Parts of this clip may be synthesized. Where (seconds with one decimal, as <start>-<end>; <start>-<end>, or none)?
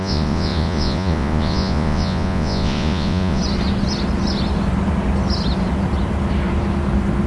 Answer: 0.0-3.4